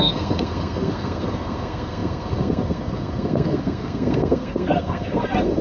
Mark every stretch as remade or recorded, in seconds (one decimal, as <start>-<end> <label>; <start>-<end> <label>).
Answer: 0.0-5.6 remade